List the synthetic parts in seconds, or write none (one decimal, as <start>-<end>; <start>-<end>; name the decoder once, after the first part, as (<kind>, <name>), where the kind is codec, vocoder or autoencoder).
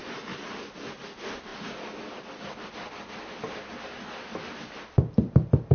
none